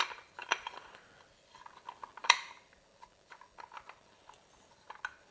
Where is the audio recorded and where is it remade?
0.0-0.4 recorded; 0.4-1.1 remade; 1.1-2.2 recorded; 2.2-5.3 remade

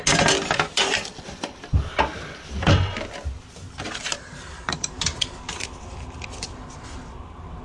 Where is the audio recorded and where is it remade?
0.0-4.0 recorded; 4.0-5.8 remade; 5.8-7.6 recorded

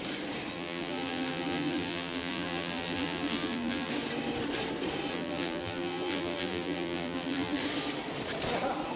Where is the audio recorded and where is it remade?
0.0-0.5 recorded; 0.5-3.9 remade; 3.9-5.1 recorded; 5.1-7.6 remade; 7.6-9.0 recorded

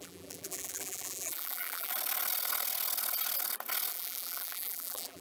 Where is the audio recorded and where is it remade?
0.0-1.9 remade; 1.9-3.9 recorded; 3.9-5.2 remade

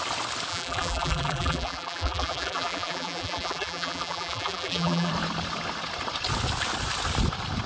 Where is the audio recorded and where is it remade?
0.0-0.5 recorded; 0.5-5.1 remade; 5.1-7.7 recorded

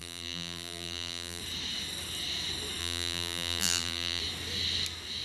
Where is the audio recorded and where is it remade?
0.0-1.4 remade; 1.4-2.8 recorded; 2.8-4.2 remade; 4.2-5.2 recorded